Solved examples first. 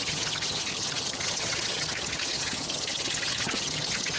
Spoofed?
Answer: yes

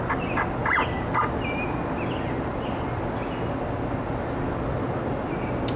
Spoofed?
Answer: no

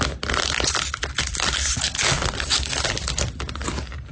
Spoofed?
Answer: no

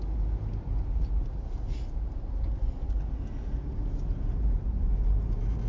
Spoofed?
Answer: no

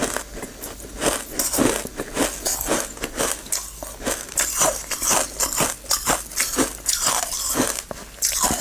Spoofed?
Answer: no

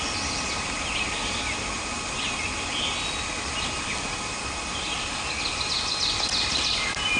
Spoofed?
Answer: no